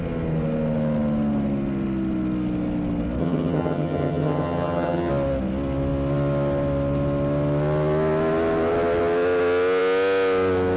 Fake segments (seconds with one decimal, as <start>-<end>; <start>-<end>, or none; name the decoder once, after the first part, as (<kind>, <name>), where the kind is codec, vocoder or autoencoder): 3.2-5.1 (vocoder, HiFi-GAN)